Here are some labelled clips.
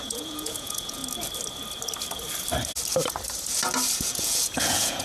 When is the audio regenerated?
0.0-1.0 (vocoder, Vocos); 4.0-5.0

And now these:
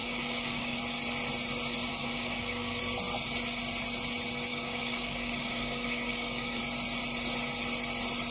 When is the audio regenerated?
0.0-0.8 (codec, DAC); 1.9-2.8; 4.5-6.6

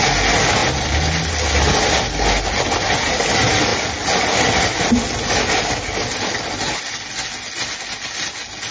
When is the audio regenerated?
none

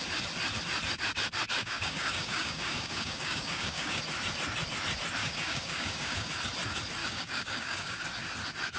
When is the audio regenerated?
1.6-4.0 (codec, DAC); 5.2-6.3; 7.0-8.0